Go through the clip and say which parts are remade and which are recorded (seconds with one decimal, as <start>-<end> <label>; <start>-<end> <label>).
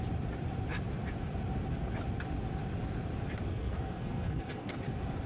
0.0-3.5 recorded; 3.5-4.8 remade; 4.8-5.3 recorded